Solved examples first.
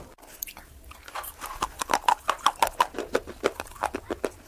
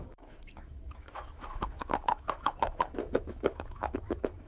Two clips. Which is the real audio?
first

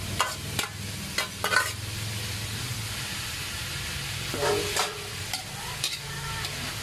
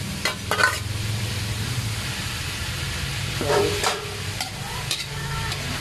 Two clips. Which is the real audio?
first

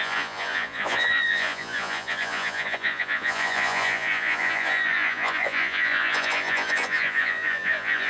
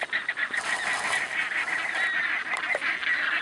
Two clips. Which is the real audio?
second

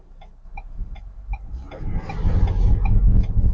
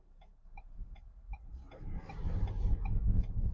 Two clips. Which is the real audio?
first